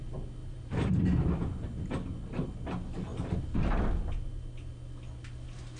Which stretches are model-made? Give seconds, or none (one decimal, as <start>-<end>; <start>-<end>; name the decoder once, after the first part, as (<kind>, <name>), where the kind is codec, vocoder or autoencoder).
0.4-1.0 (vocoder, BigVGAN v2); 3.1-3.8